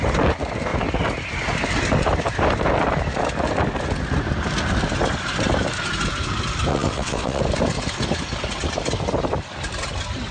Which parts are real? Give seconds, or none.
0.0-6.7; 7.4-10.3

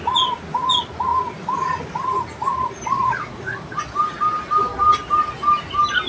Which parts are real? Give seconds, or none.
0.0-6.1

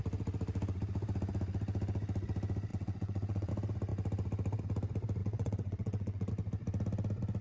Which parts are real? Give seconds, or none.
0.0-2.7; 3.5-5.2; 6.3-7.4

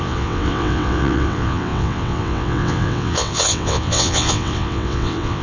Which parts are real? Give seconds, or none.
none

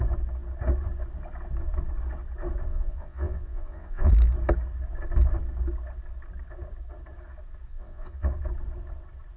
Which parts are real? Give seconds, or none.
0.0-2.7; 4.1-7.7; 8.3-9.4

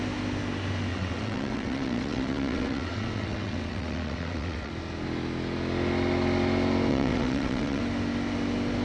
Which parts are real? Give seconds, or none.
0.0-0.9; 4.7-6.9; 7.8-8.8